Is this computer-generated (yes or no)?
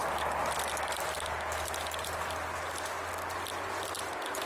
no